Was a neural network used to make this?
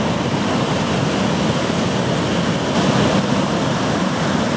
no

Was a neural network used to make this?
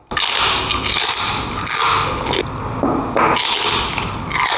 no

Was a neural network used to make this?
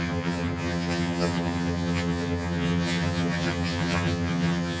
yes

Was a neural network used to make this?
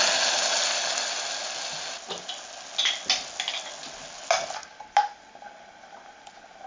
no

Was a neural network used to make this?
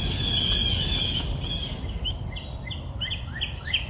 no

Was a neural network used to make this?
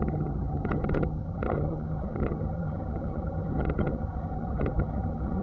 yes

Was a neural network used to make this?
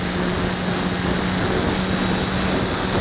no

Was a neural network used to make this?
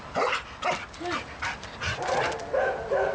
no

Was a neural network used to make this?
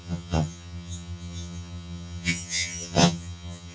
yes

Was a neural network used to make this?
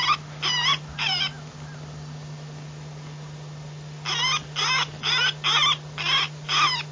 no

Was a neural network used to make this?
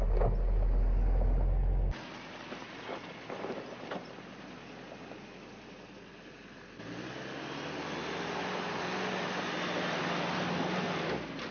no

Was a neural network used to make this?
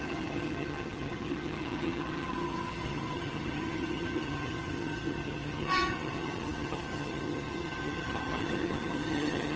yes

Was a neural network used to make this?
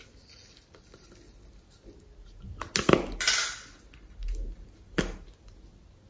no